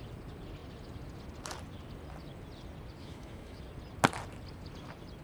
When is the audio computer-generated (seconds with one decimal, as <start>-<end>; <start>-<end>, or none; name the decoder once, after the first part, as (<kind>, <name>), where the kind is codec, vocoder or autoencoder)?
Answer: 3.0-3.6 (autoencoder, DAC-VAE)